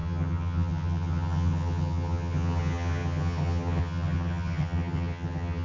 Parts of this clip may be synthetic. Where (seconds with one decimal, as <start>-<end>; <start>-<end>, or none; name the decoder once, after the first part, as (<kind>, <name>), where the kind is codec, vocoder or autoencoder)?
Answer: 0.0-5.6 (vocoder, HiFi-GAN)